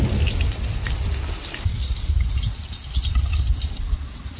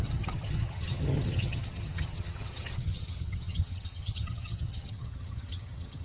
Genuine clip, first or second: first